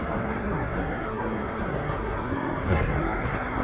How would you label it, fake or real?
fake